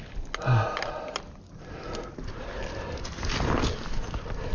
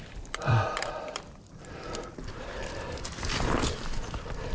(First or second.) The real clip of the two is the first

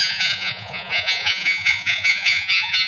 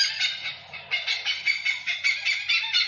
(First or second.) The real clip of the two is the second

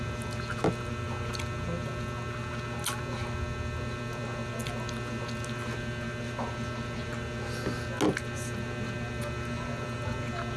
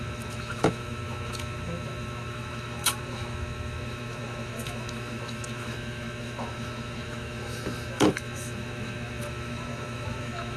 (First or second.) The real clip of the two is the first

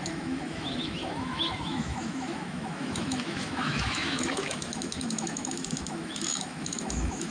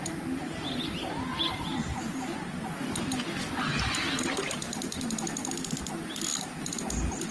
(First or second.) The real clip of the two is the second